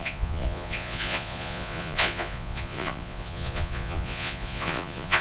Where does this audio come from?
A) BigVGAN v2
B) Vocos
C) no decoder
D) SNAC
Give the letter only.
B